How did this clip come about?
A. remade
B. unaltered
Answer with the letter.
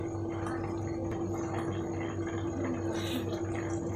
B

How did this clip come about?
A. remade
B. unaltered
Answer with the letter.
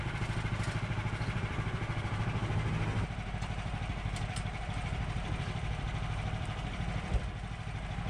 A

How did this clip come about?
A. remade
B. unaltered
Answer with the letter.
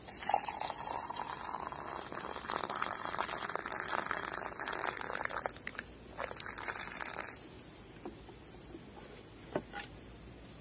B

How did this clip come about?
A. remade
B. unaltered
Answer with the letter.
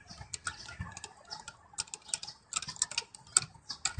B